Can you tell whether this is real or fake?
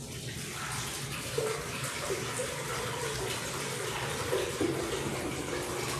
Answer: real